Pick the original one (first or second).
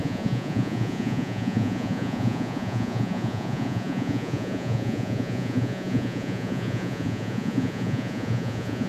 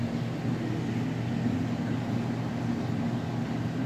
second